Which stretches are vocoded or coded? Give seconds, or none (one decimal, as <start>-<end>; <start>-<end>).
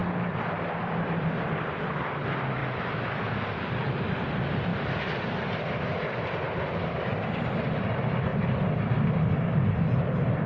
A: 0.8-2.6; 3.6-8.3; 9.3-10.5